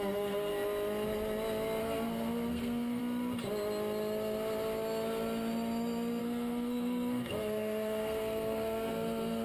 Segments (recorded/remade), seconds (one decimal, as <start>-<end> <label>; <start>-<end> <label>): 0.0-0.5 remade; 0.5-1.8 recorded; 1.8-3.0 remade; 3.0-6.2 recorded; 6.2-9.4 remade